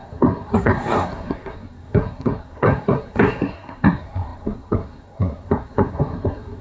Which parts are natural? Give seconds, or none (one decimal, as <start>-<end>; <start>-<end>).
none